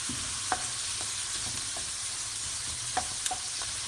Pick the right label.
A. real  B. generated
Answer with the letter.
B